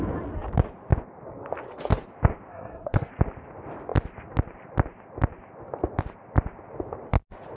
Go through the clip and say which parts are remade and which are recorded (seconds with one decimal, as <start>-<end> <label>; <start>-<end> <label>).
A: 0.0-2.5 recorded; 2.5-3.1 remade; 3.1-7.6 recorded